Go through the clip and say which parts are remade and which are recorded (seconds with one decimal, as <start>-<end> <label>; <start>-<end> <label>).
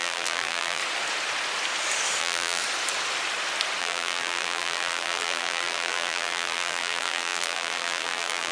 0.0-0.8 remade; 0.8-2.2 recorded; 2.2-2.6 remade; 2.6-3.8 recorded; 3.8-8.5 remade